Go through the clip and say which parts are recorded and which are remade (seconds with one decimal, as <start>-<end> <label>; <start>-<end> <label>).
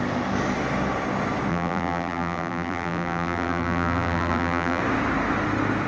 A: 0.0-1.5 recorded; 1.5-4.8 remade; 4.8-5.9 recorded